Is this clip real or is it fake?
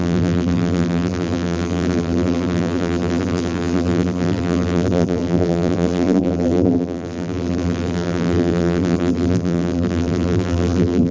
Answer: fake